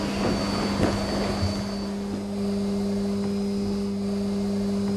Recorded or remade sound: recorded